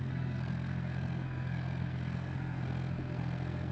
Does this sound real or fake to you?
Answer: fake